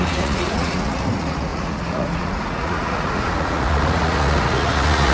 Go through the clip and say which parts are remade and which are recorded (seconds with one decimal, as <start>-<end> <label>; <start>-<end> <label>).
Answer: 0.0-5.1 remade